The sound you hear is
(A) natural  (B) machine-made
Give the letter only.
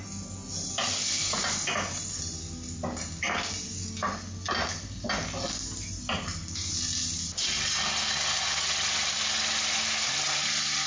A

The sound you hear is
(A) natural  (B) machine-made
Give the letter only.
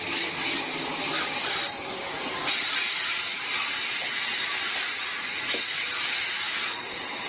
A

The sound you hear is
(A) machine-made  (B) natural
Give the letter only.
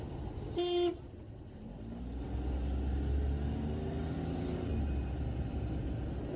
B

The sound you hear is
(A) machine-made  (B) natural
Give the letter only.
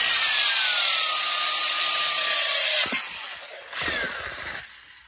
B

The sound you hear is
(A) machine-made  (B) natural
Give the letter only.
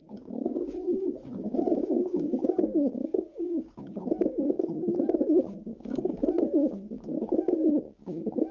A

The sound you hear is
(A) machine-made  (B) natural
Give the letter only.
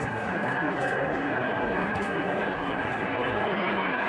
A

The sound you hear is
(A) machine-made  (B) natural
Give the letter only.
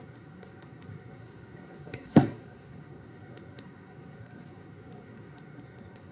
A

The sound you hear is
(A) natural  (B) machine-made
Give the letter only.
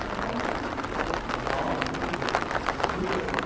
A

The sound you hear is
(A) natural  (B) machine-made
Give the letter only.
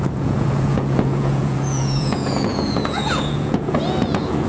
B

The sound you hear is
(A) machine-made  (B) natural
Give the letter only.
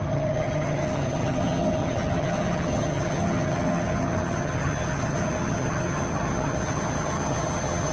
A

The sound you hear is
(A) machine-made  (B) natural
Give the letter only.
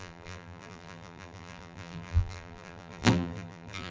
A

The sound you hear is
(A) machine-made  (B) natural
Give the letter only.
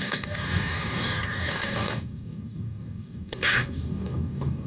A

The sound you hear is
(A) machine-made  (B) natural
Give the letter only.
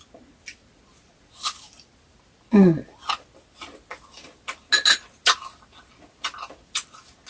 B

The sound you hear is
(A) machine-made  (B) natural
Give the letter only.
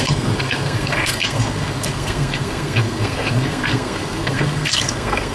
A